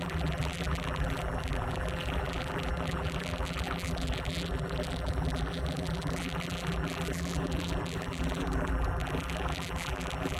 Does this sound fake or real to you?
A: fake